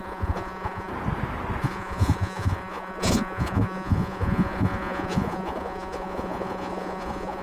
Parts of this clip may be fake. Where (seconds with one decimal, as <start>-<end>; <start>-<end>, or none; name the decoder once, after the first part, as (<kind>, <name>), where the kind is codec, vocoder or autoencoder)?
0.0-0.9 (vocoder, Vocos); 1.6-7.4